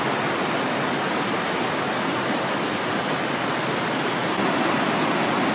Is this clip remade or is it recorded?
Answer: recorded